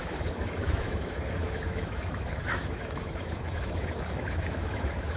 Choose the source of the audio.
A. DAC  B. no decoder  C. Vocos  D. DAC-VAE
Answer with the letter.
D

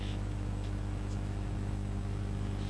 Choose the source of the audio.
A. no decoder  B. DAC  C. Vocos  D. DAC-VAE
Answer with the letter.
D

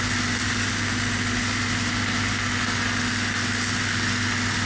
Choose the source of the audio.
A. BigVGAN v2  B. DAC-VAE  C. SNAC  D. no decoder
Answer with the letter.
D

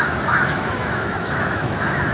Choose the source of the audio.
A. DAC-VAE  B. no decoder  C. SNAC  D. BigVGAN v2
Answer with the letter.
A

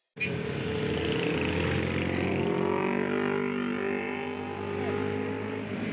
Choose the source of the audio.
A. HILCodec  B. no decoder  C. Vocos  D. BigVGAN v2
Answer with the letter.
B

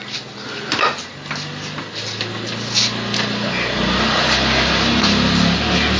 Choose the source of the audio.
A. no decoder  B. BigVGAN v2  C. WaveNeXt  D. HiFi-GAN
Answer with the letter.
A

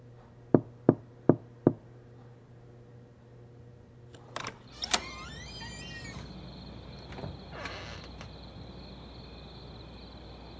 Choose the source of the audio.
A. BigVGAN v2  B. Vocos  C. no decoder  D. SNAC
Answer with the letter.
C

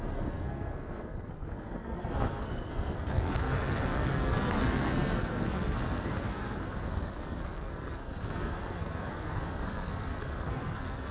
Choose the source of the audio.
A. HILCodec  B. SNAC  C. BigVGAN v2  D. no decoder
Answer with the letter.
B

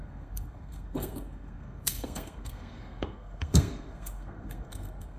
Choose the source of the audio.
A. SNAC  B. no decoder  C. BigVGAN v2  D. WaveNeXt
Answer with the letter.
A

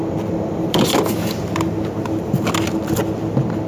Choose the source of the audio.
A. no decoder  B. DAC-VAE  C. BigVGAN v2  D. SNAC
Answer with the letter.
C